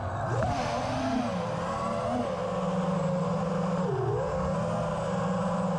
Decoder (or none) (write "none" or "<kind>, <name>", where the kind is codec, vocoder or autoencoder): none